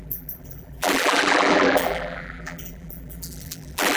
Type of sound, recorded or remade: remade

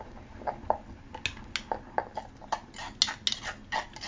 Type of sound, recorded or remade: recorded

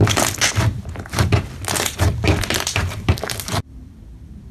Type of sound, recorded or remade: remade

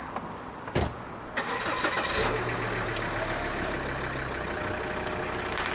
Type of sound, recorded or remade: recorded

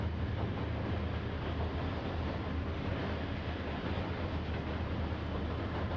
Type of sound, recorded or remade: recorded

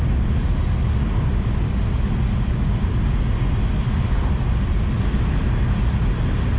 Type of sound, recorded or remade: recorded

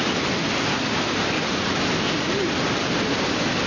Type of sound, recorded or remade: remade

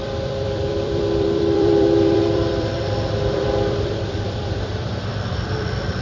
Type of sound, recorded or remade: remade